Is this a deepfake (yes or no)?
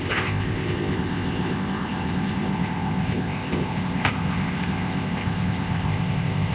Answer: yes